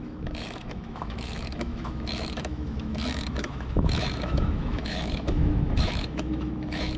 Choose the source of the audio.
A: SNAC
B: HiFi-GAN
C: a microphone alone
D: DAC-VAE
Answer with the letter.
D